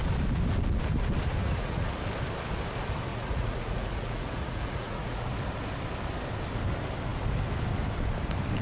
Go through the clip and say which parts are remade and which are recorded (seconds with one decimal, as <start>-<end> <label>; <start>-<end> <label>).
0.0-1.4 recorded; 1.4-1.9 remade; 1.9-3.1 recorded; 3.1-5.3 remade; 5.3-8.6 recorded